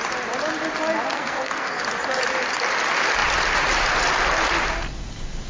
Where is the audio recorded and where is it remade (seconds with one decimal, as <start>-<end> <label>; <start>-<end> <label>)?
0.0-1.1 recorded; 1.1-1.8 remade; 1.8-5.5 recorded